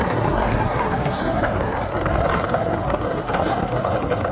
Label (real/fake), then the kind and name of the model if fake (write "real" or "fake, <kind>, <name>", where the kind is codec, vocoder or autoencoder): fake, codec, SNAC